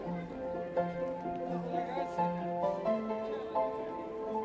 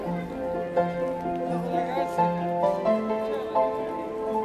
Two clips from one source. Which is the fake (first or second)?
first